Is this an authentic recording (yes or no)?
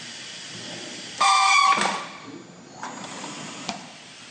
yes